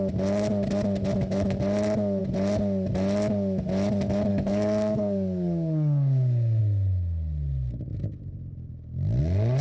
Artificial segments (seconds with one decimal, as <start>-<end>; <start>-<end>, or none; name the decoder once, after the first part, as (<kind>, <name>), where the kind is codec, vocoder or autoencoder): 4.3-6.6 (codec, DAC)